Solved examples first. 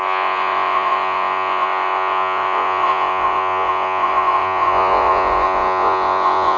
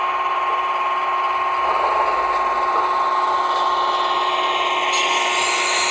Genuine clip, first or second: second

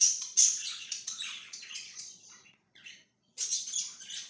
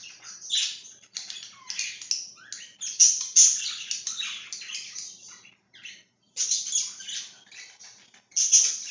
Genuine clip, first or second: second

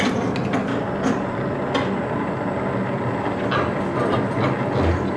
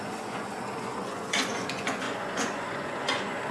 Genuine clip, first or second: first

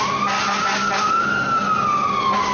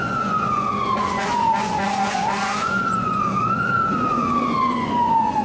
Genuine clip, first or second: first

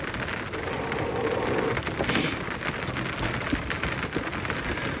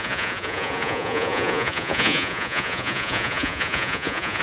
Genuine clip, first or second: first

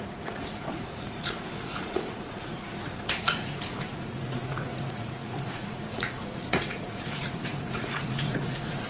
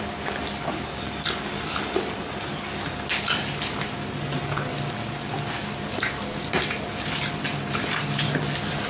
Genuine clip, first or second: second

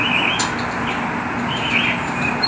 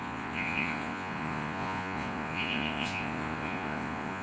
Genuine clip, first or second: first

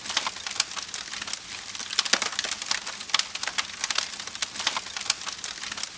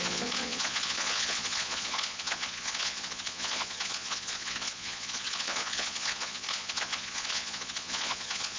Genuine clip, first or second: first